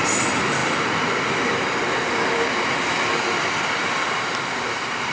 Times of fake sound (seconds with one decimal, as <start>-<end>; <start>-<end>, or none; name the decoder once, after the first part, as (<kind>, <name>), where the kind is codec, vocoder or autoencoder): none